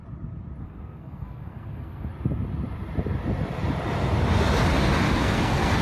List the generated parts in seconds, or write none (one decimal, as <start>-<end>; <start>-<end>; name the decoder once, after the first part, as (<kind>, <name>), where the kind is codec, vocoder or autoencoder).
0.6-2.1 (codec, SNAC); 5.2-5.8

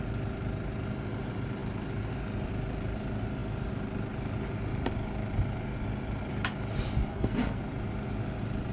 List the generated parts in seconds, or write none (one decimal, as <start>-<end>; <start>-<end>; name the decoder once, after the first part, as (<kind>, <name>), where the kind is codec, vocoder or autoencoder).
7.1-7.6 (codec, SNAC)

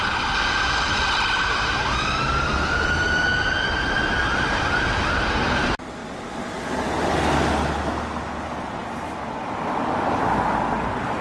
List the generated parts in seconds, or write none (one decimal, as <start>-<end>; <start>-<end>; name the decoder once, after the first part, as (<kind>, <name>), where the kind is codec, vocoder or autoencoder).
none

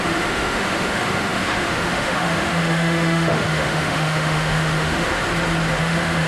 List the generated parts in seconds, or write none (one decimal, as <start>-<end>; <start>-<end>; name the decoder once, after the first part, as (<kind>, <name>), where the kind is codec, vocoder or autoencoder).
0.0-5.1 (autoencoder, DAC-VAE); 5.8-6.3

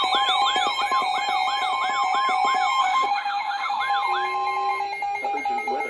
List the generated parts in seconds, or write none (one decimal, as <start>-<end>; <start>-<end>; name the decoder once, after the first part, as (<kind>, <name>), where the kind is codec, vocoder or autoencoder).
2.8-3.8 (autoencoder, DAC-VAE)

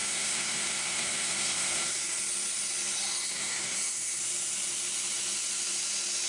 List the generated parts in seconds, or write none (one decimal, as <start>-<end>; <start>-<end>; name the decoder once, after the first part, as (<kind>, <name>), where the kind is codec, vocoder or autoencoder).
0.0-2.2 (codec, SNAC); 3.2-4.2